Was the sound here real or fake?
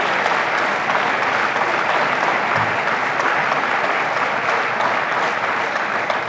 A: real